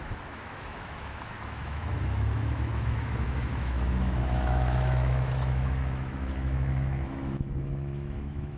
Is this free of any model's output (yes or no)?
no